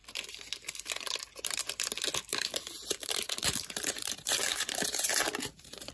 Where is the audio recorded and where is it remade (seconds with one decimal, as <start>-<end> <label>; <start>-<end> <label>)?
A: 0.0-2.3 recorded; 2.3-5.9 remade